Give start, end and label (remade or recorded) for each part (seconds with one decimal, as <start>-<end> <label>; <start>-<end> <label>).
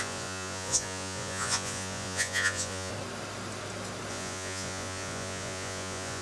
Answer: 0.0-2.9 remade; 2.9-4.1 recorded; 4.1-6.2 remade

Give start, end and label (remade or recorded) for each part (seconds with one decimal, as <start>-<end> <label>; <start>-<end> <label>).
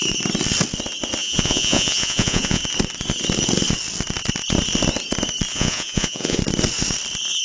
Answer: 0.0-1.2 recorded; 1.2-2.6 remade; 2.6-5.5 recorded; 5.5-6.4 remade; 6.4-7.4 recorded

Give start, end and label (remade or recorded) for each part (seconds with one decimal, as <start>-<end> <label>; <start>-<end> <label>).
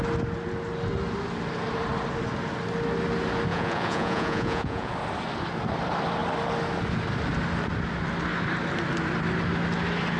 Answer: 0.0-3.5 recorded; 3.5-4.9 remade; 4.9-10.2 recorded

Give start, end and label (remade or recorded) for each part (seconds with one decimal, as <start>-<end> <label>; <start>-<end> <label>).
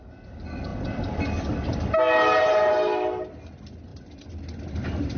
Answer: 0.0-5.2 recorded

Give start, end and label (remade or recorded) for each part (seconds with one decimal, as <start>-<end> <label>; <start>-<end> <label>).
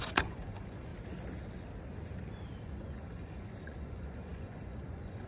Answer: 0.0-0.9 remade; 0.9-2.6 recorded; 2.6-5.3 remade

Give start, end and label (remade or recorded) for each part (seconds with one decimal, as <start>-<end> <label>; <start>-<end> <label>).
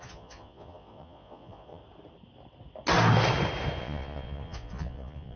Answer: 0.0-1.8 remade; 1.8-3.8 recorded; 3.8-5.4 remade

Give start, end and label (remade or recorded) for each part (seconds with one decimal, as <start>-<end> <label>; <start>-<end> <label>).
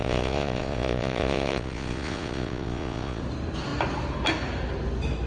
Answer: 0.0-3.2 remade; 3.2-5.3 recorded